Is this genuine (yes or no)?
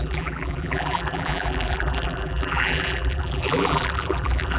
no